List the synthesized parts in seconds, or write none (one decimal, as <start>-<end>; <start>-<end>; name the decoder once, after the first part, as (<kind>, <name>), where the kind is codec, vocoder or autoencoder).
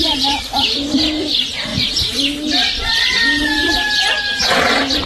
none